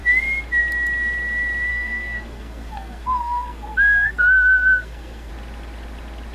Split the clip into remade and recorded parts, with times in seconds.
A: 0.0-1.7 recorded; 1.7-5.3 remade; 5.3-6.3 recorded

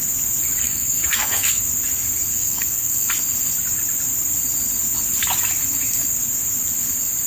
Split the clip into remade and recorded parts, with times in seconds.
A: 0.0-0.6 recorded; 0.6-1.6 remade; 1.6-2.3 recorded; 2.3-3.1 remade; 3.1-7.3 recorded

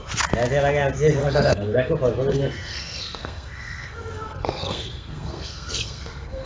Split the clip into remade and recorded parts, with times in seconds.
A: 0.0-1.2 recorded; 1.2-1.9 remade; 1.9-2.3 recorded; 2.3-6.5 remade